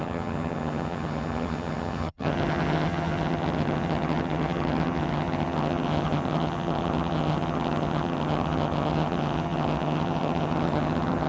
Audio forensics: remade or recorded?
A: remade